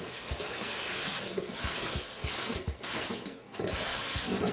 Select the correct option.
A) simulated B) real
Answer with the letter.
A